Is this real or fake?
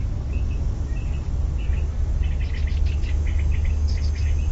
real